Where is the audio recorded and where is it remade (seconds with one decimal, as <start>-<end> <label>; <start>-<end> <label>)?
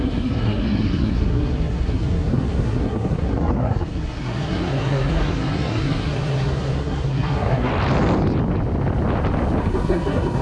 0.0-7.7 remade; 7.7-9.6 recorded; 9.6-10.4 remade